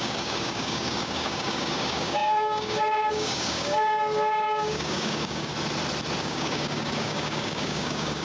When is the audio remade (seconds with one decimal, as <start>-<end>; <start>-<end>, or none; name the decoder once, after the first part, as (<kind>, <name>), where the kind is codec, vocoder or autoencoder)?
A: 0.0-5.5 (codec, DAC); 6.2-8.2

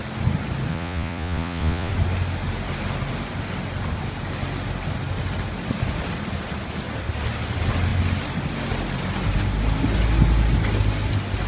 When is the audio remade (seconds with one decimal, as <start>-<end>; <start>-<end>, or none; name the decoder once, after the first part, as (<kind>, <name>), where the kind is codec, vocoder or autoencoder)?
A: 0.7-1.9 (vocoder, Vocos)

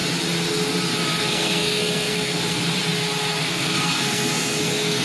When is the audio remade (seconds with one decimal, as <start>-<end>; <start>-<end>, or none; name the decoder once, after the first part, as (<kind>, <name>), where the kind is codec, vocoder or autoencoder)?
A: 1.2-2.6 (codec, SNAC); 3.4-5.0